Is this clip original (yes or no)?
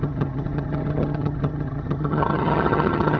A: no